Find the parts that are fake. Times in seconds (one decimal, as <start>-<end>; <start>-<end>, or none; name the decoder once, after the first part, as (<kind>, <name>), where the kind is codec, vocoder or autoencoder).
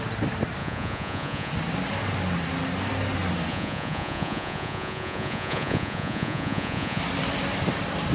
0.6-1.5 (vocoder, Vocos); 3.5-7.0